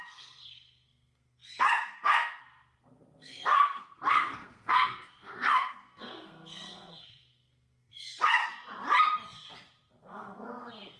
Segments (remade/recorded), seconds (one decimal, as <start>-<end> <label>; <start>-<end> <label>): 0.0-8.4 remade; 8.4-10.0 recorded; 10.0-11.0 remade